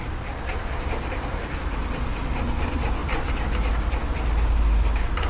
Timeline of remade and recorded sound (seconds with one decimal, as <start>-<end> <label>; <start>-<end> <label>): 0.0-5.3 recorded